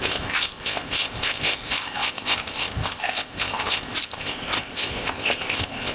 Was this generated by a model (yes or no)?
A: yes